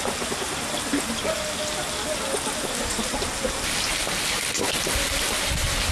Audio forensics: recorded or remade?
recorded